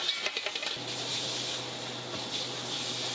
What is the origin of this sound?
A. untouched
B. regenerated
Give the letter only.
A